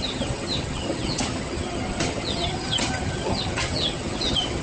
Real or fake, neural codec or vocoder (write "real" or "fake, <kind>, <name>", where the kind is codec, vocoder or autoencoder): fake, vocoder, HiFi-GAN